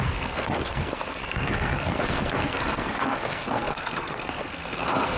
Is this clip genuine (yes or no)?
no